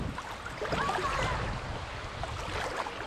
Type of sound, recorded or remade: recorded